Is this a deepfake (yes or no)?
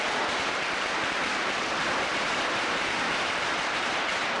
no